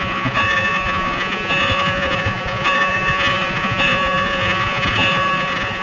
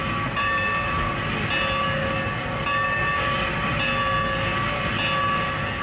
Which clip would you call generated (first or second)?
first